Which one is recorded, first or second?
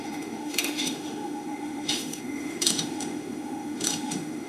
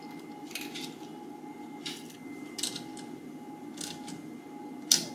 second